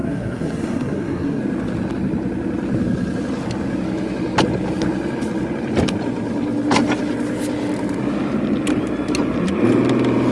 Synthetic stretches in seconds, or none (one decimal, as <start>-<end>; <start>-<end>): 0.0-1.4